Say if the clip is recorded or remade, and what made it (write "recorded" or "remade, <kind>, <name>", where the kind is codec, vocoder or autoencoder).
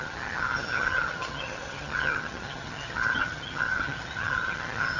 remade, vocoder, HiFi-GAN